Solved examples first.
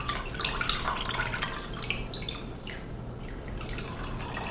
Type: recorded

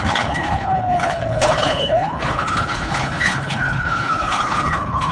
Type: remade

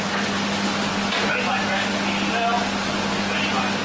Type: recorded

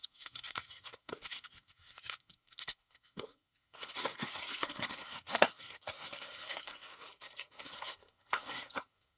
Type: remade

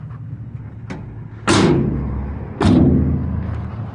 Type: recorded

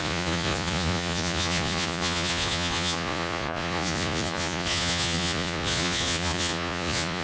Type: remade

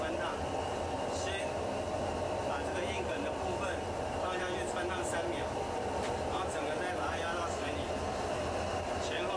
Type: recorded